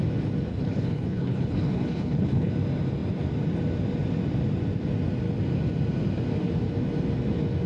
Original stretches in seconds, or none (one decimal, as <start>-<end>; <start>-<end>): 0.0-0.5; 2.5-7.7